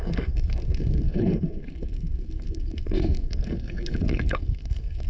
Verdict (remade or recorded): remade